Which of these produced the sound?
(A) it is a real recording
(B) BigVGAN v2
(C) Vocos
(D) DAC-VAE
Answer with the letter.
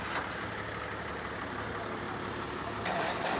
A